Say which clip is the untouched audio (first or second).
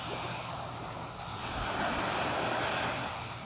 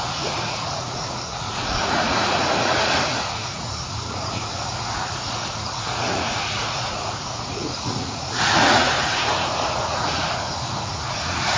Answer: first